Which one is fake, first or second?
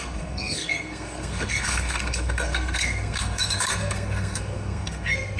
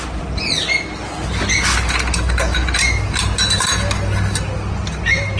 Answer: first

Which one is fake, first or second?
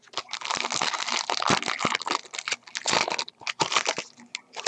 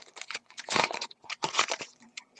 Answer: second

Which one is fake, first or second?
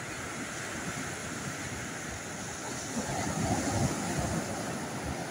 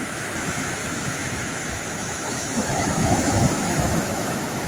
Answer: second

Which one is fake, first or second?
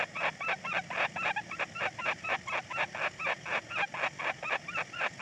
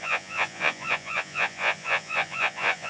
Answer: second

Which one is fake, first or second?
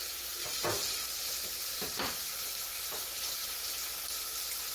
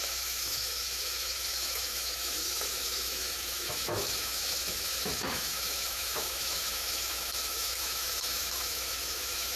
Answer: second